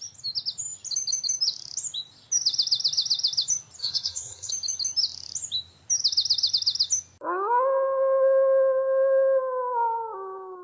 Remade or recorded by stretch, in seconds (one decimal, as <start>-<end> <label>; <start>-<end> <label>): 0.0-3.8 recorded; 3.8-4.5 remade; 4.5-10.6 recorded